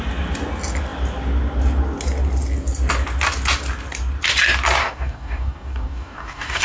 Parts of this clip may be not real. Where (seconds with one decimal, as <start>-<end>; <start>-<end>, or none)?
4.8-6.6